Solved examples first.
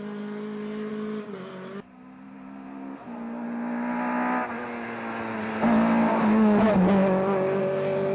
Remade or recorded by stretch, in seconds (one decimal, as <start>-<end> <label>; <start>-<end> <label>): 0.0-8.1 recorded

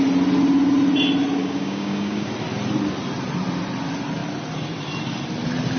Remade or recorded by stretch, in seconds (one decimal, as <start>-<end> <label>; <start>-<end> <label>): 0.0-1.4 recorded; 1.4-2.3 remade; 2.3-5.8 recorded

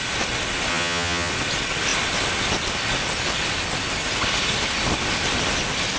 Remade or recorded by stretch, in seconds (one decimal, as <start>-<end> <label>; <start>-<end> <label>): 0.0-0.7 recorded; 0.7-1.3 remade; 1.3-6.0 recorded